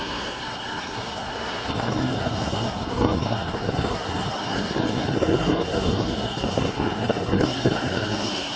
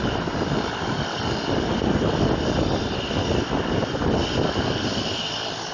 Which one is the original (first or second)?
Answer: second